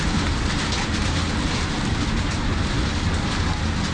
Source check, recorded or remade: recorded